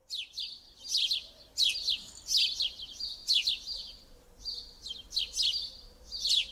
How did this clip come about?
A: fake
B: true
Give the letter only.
B